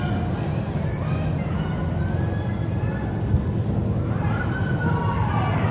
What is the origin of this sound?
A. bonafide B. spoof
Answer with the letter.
A